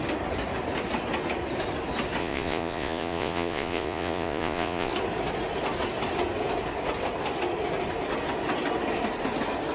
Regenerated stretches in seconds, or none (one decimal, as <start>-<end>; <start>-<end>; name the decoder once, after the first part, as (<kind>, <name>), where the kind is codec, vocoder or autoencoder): 2.2-4.9 (vocoder, Vocos)